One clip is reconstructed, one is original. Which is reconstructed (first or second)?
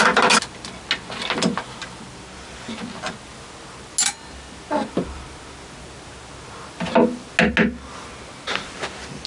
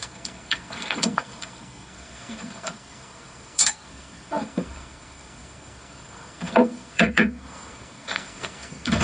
second